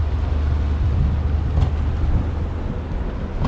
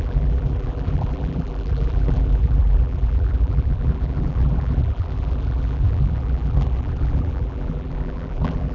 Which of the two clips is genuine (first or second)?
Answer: first